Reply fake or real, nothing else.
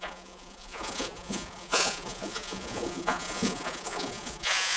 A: fake